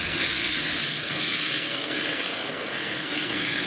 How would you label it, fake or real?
fake